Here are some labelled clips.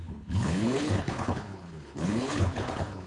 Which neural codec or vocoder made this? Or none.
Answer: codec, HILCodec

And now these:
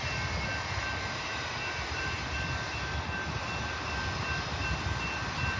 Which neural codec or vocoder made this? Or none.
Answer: none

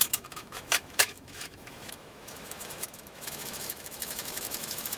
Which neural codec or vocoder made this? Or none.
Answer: autoencoder, DAC-VAE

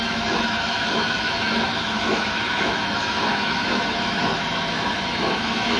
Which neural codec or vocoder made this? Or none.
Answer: autoencoder, DAC-VAE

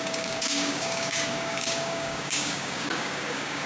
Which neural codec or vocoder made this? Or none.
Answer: codec, DAC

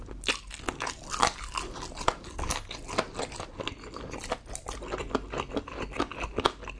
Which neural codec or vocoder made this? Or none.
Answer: none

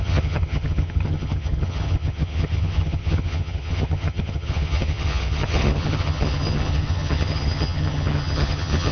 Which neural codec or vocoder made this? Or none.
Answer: vocoder, HiFi-GAN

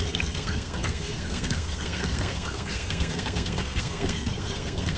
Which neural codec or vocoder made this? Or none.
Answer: codec, SNAC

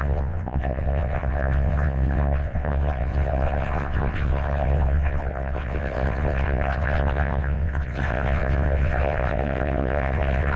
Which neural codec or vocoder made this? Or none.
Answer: vocoder, WaveNeXt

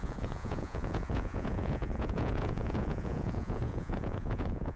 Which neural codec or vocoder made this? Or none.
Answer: vocoder, Vocos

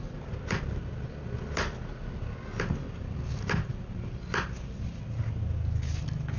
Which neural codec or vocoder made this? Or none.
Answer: none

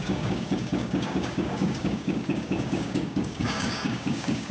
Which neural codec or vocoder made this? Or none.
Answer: codec, DAC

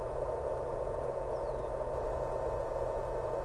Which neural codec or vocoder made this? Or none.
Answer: vocoder, Vocos